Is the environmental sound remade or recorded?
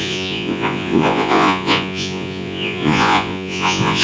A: remade